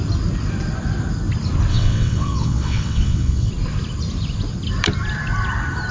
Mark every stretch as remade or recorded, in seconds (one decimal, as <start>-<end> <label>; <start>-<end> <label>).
0.0-1.7 recorded; 1.7-3.5 remade; 3.5-5.9 recorded